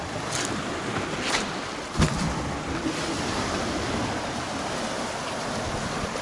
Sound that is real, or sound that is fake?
real